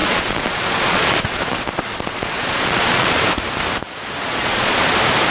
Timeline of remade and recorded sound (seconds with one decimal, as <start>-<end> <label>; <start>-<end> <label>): 0.0-3.2 remade; 3.2-4.2 recorded; 4.2-4.8 remade; 4.8-5.3 recorded